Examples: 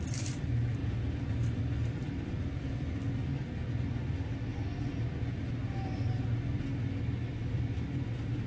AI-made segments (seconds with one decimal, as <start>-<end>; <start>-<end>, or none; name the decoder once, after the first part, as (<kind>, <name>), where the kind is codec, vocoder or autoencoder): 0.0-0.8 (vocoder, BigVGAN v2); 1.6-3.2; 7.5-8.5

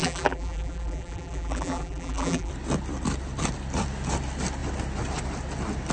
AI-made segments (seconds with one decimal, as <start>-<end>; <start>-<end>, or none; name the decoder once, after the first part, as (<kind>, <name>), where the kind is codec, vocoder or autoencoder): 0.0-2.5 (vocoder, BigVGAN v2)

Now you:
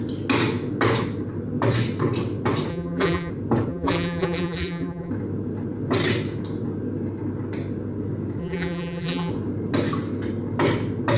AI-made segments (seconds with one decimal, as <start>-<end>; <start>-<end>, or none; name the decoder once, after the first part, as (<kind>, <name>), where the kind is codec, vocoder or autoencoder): 2.7-3.3 (vocoder, BigVGAN v2); 3.7-5.1; 8.4-9.3

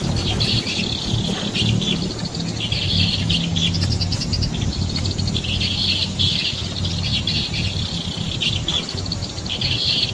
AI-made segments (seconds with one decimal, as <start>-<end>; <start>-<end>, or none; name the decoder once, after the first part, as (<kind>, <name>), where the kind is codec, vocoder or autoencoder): none

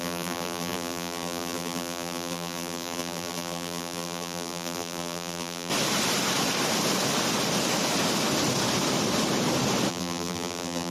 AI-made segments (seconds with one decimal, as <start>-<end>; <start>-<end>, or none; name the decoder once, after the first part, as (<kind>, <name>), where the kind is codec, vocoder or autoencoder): 0.0-5.7 (vocoder, BigVGAN v2); 9.9-10.9

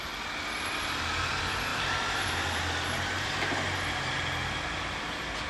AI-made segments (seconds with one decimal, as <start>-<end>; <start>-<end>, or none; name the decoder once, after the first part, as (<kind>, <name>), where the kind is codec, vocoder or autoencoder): 1.7-2.6 (vocoder, BigVGAN v2)

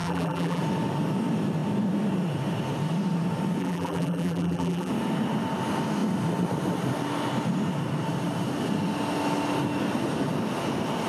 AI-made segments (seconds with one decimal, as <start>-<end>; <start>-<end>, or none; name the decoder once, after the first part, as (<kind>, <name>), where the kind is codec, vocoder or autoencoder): 0.0-0.6 (vocoder, BigVGAN v2); 3.6-4.9